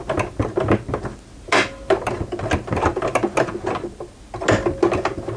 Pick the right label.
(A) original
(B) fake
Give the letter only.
A